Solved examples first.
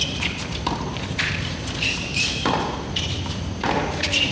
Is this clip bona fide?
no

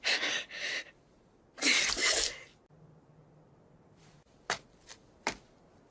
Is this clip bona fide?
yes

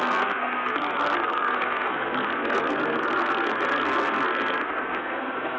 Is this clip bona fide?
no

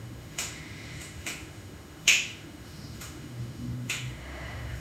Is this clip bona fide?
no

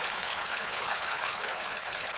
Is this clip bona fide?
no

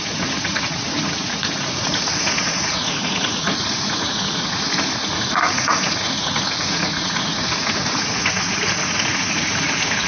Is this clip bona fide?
no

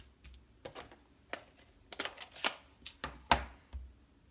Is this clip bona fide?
yes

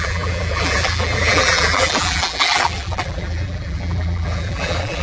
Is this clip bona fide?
no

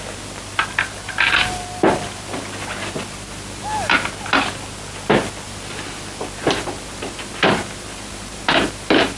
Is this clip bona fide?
yes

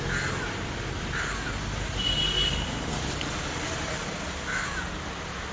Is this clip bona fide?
yes